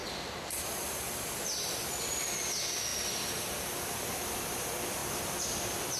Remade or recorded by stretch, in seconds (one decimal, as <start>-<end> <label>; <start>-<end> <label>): 0.0-0.6 remade; 0.6-6.0 recorded